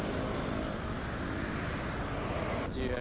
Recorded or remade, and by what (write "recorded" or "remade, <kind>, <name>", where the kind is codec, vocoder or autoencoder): recorded